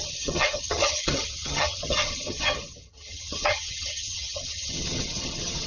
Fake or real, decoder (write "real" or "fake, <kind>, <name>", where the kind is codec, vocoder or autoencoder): fake, vocoder, HiFi-GAN